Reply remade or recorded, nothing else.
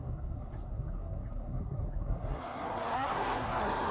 remade